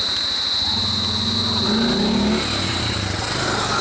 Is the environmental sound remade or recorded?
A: recorded